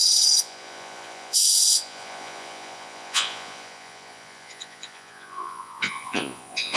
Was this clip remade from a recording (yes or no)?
yes